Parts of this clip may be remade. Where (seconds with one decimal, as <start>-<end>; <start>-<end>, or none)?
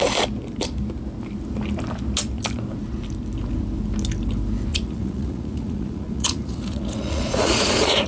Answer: 4.7-8.1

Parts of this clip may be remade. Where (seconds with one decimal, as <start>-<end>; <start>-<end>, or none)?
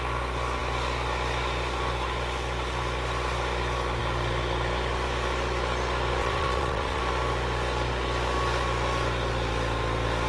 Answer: 6.2-7.0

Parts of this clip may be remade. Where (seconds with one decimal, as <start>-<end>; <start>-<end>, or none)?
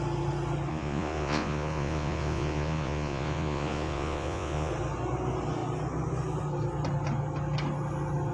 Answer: 0.7-4.7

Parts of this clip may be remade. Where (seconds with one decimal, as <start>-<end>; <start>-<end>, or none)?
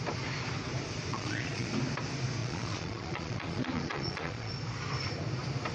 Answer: 1.1-1.7; 2.4-4.5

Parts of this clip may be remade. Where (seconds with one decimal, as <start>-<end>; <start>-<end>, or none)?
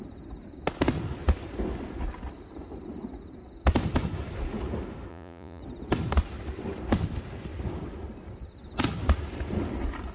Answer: 5.1-5.6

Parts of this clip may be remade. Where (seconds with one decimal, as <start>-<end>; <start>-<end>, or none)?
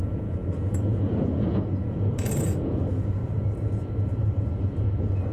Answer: 0.0-3.2